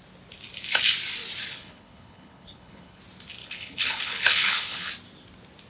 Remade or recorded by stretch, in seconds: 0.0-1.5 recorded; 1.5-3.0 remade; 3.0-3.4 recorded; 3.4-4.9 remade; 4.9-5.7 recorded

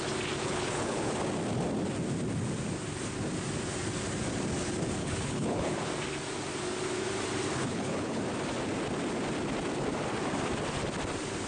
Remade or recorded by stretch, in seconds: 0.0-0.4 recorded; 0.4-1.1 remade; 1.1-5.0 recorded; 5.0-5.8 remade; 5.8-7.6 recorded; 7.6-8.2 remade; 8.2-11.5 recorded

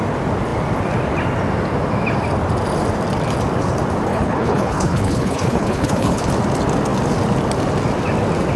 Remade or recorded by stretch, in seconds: 0.0-4.1 recorded; 4.1-6.3 remade; 6.3-8.6 recorded

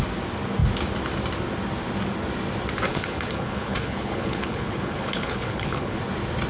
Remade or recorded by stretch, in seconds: 0.0-2.9 recorded; 2.9-6.0 remade; 6.0-6.5 recorded

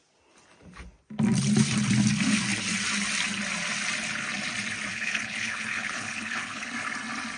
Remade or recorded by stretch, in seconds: 0.0-4.9 recorded; 4.9-6.7 remade; 6.7-7.4 recorded

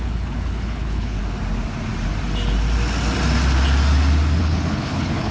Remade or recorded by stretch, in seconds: 0.0-1.2 remade; 1.2-4.4 recorded; 4.4-5.3 remade

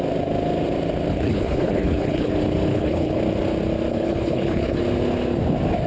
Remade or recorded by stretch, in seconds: 0.0-1.1 recorded; 1.1-2.3 remade; 2.3-2.7 recorded; 2.7-3.2 remade; 3.2-3.9 recorded; 3.9-4.8 remade; 4.8-5.9 recorded